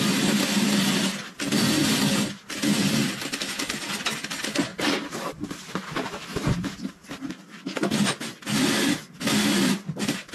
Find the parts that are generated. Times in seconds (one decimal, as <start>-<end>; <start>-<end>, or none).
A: 4.7-6.9